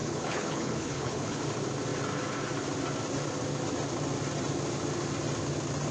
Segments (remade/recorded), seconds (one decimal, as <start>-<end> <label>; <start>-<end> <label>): 0.0-1.4 remade; 1.4-5.9 recorded